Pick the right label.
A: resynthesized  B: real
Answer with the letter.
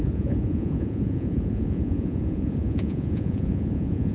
A